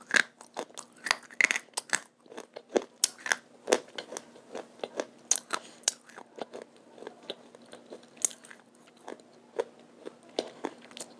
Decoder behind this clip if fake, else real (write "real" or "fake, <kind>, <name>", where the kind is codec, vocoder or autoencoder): real